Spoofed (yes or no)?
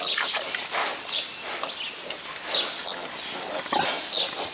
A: no